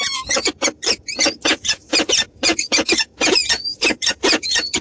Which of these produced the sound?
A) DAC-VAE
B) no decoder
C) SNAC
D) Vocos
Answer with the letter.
D